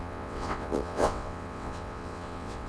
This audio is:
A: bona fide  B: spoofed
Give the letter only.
B